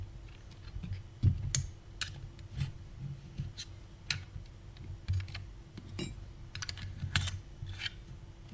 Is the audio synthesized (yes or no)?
no